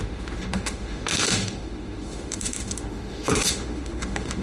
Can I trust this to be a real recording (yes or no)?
no